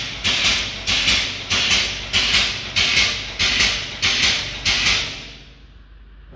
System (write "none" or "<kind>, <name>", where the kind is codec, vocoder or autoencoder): none